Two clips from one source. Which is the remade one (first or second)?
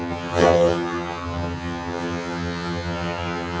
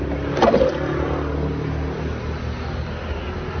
first